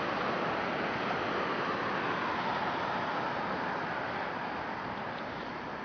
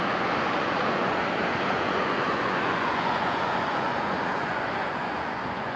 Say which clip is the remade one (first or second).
second